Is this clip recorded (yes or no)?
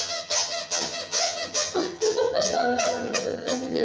no